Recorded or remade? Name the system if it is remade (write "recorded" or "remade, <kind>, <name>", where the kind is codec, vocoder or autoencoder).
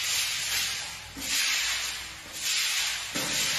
recorded